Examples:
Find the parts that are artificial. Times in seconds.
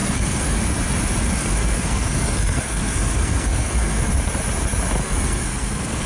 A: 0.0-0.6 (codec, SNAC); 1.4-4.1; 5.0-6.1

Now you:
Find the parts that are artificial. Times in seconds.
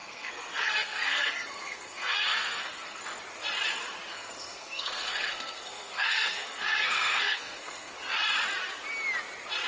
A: 0.0-3.0 (codec, SNAC); 4.1-7.9